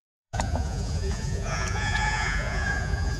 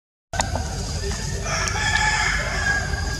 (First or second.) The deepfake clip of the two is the first